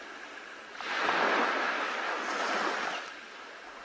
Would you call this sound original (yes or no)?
yes